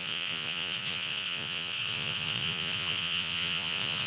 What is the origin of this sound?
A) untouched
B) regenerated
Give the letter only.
B